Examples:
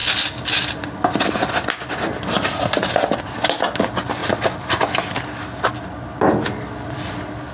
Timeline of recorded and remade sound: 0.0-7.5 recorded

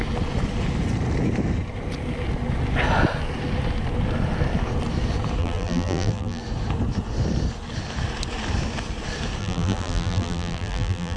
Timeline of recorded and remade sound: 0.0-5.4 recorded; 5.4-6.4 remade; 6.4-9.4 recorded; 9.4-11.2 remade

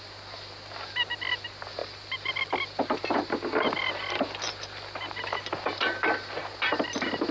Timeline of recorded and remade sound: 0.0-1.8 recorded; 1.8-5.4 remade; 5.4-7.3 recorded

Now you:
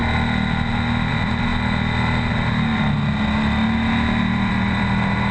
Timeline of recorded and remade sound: 0.0-1.1 recorded; 1.1-1.5 remade; 1.5-4.2 recorded; 4.2-5.3 remade